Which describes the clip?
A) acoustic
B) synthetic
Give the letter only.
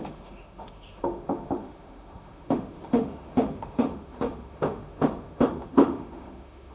B